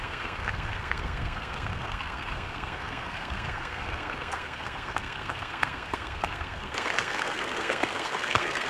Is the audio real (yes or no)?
no